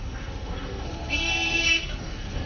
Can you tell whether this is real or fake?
fake